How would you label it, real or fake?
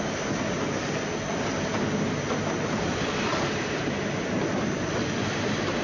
real